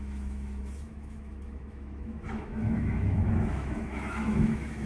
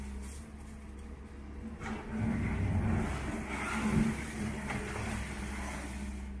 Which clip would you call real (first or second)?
second